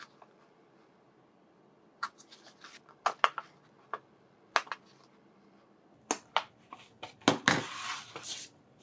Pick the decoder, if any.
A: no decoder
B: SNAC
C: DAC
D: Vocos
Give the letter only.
A